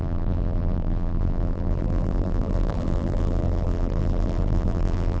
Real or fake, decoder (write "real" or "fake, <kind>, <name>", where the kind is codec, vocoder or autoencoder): fake, vocoder, BigVGAN v2